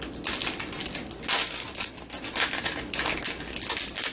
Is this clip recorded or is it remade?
recorded